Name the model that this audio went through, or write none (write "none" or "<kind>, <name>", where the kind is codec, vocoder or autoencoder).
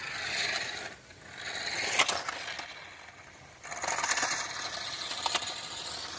none